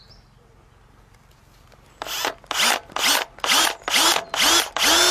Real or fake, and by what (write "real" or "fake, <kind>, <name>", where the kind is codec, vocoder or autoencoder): real